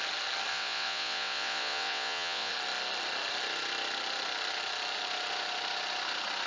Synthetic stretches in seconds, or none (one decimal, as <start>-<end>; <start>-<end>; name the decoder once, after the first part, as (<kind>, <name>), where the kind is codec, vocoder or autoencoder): 0.5-2.5 (vocoder, WaveNeXt)